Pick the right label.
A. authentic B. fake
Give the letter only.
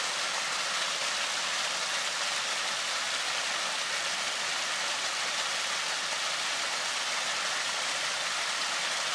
A